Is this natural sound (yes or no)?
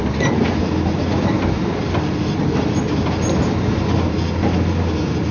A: yes